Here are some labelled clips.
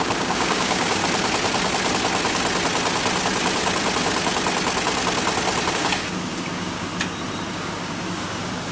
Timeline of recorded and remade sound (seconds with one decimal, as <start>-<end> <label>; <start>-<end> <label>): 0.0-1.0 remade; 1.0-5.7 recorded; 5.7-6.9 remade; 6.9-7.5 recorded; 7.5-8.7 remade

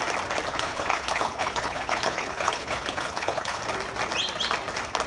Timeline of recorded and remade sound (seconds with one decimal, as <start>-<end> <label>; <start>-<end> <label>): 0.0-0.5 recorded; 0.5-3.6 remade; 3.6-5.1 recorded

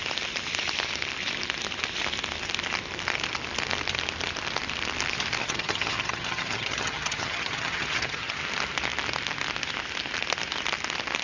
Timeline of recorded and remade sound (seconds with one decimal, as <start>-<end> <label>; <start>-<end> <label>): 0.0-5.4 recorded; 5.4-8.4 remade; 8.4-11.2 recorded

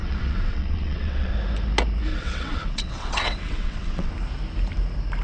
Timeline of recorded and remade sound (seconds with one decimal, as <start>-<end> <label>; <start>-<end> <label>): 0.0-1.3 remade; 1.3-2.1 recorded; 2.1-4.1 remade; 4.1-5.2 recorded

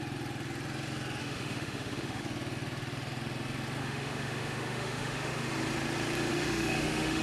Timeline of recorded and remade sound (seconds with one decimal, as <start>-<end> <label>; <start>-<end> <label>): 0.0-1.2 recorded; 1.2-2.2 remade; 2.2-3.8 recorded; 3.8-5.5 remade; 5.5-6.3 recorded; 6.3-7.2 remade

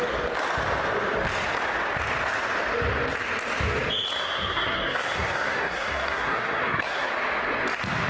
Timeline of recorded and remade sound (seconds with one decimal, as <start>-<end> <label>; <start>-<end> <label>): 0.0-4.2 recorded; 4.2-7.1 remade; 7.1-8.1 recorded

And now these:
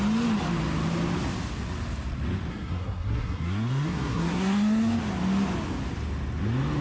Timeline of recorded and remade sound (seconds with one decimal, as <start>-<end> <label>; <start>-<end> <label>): 0.0-2.5 recorded; 2.5-5.0 remade; 5.0-6.8 recorded